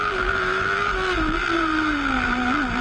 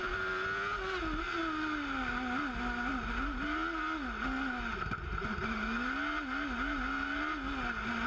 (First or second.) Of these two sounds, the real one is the second